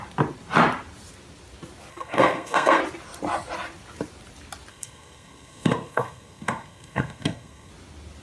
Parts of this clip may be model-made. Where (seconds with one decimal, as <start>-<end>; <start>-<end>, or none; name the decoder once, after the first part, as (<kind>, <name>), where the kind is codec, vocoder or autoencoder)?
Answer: 1.9-2.8 (codec, SNAC); 4.7-7.7